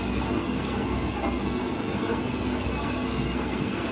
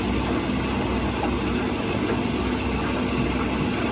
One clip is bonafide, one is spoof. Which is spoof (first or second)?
first